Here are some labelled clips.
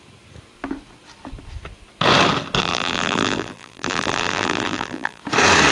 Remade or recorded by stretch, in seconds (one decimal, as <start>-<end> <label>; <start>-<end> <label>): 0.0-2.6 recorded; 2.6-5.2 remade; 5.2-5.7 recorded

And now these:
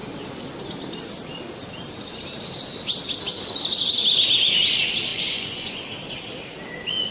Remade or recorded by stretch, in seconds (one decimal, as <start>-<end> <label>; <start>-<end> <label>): 0.0-5.1 recorded; 5.1-5.8 remade; 5.8-7.1 recorded

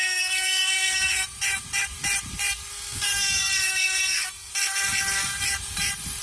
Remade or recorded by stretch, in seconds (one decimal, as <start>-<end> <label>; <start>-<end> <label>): 0.0-1.1 remade; 1.1-2.7 recorded; 2.7-4.5 remade; 4.5-6.2 recorded